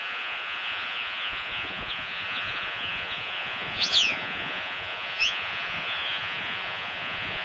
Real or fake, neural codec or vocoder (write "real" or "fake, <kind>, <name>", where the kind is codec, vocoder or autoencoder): fake, vocoder, Vocos